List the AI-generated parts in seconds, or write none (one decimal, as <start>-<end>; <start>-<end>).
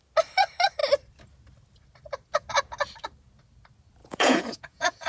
4.0-5.1